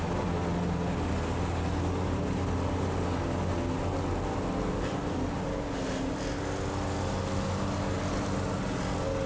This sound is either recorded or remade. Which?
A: recorded